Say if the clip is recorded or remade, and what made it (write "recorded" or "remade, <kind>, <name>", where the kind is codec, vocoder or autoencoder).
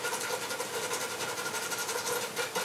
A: recorded